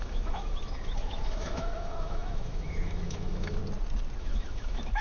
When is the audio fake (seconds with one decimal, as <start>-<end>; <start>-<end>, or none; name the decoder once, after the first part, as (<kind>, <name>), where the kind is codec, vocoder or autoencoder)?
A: 0.0-3.6 (autoencoder, DAC-VAE); 4.2-5.0